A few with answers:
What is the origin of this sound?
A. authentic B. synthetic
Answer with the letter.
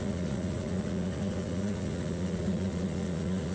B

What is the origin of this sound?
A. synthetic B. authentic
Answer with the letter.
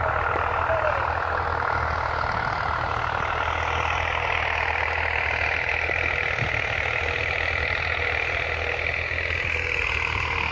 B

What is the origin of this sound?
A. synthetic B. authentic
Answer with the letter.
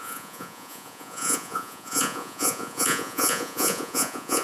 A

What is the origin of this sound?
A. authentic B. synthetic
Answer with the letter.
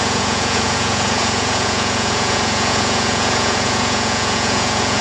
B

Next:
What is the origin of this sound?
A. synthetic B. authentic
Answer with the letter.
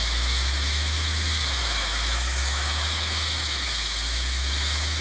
A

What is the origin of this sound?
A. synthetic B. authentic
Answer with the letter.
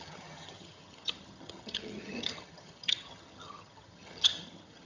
A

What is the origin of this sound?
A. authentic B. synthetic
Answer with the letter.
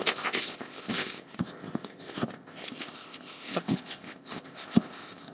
B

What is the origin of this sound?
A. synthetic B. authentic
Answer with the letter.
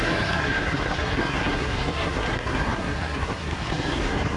A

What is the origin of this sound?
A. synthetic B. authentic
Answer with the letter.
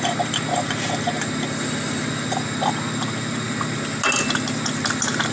B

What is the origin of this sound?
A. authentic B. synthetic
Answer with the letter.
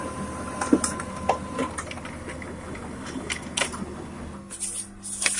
A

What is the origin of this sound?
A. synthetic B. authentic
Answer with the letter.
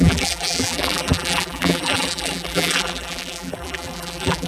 A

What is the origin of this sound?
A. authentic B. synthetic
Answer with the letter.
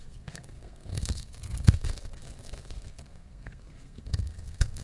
B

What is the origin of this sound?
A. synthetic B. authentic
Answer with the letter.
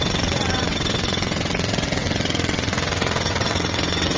A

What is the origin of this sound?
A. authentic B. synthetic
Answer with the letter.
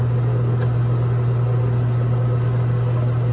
A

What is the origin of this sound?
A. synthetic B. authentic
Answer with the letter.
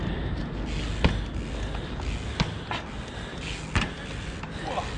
B